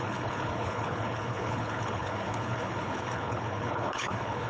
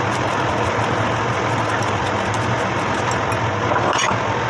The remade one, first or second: first